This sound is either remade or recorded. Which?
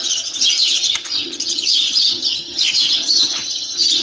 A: remade